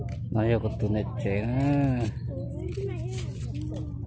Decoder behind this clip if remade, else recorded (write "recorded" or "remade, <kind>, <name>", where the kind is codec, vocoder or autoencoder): recorded